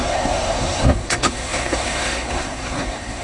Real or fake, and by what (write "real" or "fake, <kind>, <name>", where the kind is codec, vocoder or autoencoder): fake, codec, SNAC